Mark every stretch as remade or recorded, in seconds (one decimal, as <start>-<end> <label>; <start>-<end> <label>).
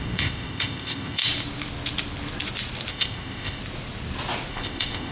0.0-1.2 remade; 1.2-2.9 recorded; 2.9-3.6 remade; 3.6-4.5 recorded; 4.5-5.1 remade